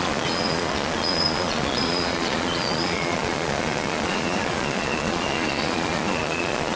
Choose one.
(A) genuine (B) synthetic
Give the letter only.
B